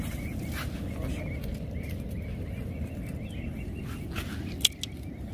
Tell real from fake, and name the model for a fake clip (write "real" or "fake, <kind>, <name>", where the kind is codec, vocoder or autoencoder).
real